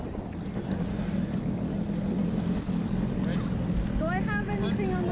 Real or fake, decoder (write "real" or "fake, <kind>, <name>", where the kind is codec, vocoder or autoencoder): real